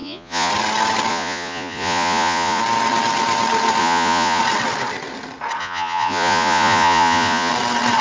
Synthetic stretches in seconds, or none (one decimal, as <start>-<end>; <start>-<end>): 0.0-0.5; 1.1-2.6; 3.8-4.4; 5.6-7.5